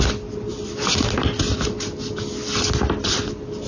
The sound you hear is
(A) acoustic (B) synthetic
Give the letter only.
A